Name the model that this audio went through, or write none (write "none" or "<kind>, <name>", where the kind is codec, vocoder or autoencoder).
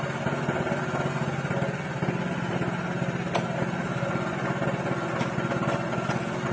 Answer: none